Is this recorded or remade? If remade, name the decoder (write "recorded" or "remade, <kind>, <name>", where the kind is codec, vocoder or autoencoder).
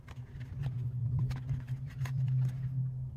recorded